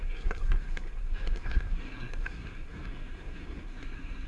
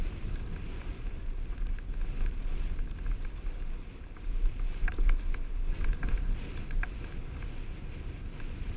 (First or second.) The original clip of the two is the second